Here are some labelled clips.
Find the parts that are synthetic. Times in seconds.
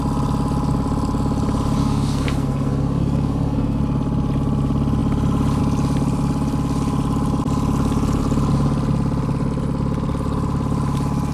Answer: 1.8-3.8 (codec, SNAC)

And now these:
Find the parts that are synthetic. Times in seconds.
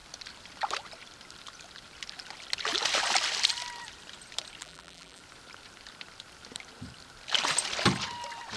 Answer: 4.6-5.2 (vocoder, BigVGAN v2)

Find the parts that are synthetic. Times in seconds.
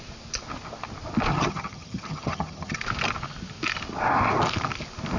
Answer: 1.3-2.8 (vocoder, HiFi-GAN)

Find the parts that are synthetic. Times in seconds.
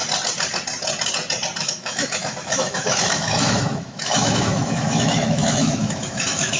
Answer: 1.6-6.6 (autoencoder, DAC-VAE)